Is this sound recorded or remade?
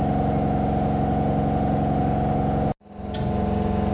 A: recorded